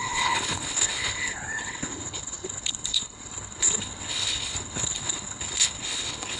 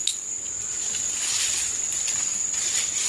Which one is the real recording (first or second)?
second